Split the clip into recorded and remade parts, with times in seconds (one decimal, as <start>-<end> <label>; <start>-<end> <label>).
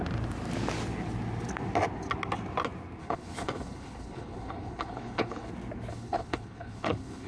0.0-3.0 recorded; 3.0-5.5 remade; 5.5-5.9 recorded; 5.9-7.3 remade